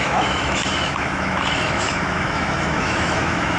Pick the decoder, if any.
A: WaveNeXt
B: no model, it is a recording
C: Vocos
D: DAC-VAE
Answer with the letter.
D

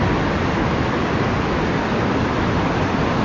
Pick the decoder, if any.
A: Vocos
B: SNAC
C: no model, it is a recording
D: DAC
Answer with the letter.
C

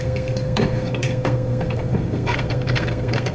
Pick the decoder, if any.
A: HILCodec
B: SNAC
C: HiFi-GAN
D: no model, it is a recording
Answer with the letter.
B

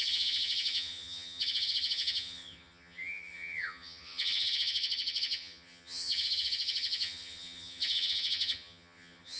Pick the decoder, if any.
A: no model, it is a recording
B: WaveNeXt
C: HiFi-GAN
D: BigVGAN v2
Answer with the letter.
C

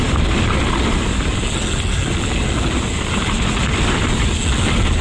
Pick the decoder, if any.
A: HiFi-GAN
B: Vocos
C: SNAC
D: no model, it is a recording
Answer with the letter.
D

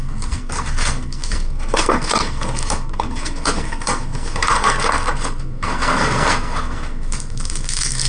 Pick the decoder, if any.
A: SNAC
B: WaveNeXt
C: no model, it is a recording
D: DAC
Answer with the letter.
A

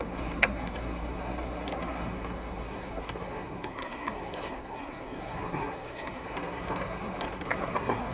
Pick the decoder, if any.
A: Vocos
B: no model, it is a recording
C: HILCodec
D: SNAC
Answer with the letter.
D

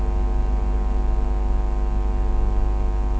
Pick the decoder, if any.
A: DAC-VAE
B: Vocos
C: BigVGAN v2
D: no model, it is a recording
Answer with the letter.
D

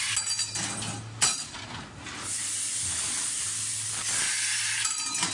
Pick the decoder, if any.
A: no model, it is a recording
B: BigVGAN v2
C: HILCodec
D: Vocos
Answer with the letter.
A